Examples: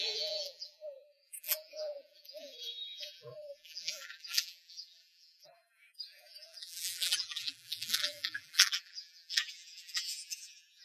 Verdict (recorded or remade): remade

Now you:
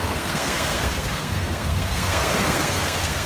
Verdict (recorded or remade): remade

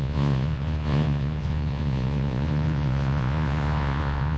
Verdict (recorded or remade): remade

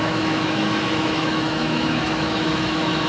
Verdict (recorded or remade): remade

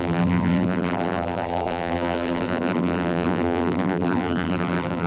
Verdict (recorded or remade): remade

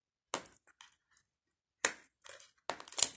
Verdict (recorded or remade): recorded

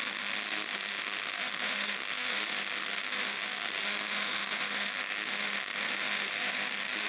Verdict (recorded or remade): remade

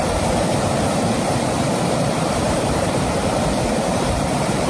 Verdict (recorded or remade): remade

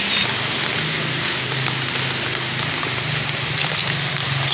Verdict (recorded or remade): recorded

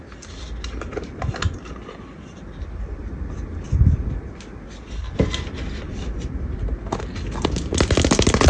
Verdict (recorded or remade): recorded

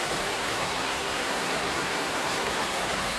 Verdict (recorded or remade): remade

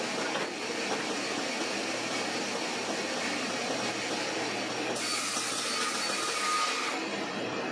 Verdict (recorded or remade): recorded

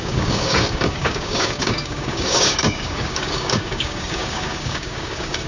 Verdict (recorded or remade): remade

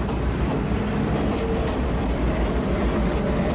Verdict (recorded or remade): recorded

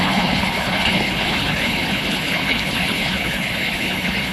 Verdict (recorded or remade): remade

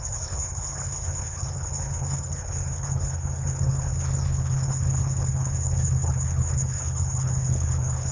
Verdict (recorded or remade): remade